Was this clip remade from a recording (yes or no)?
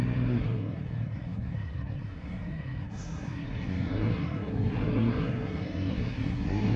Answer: yes